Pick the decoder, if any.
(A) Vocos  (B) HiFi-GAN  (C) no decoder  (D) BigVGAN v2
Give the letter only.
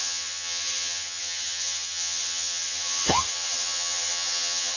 B